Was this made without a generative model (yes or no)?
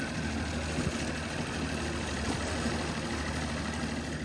yes